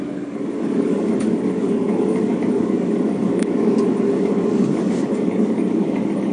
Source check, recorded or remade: remade